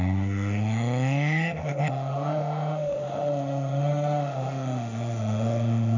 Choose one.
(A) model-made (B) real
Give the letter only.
A